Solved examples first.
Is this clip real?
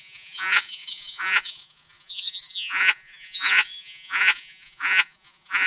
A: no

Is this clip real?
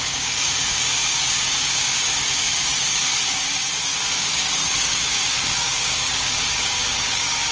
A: no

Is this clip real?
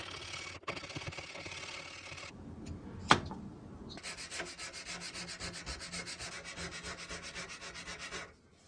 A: yes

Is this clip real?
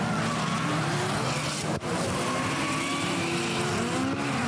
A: yes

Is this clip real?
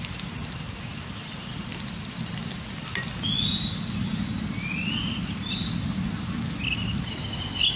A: yes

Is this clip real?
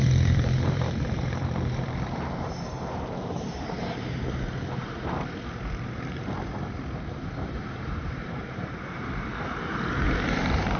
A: no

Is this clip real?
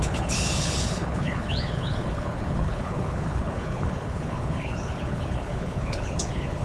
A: no